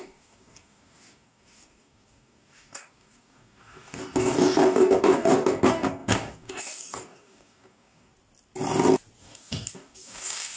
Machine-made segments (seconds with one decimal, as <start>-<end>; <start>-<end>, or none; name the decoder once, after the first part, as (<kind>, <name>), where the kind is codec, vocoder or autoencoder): 0.0-8.1 (codec, DAC); 9.2-10.6